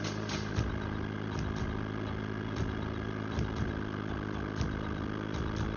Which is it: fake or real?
real